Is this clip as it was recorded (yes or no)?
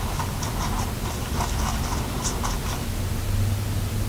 yes